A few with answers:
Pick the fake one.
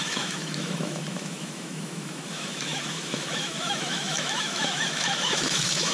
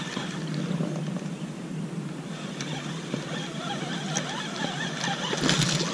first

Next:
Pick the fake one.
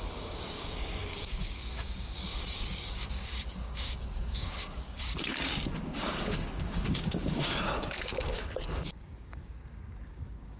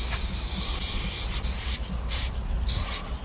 first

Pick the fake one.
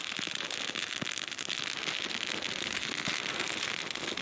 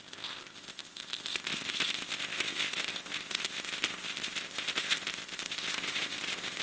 second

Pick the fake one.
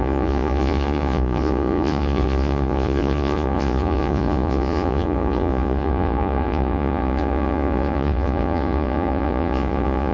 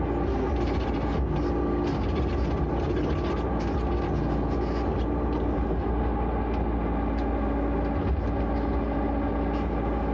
first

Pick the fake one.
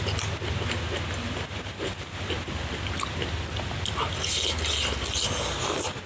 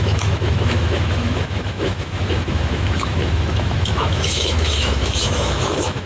second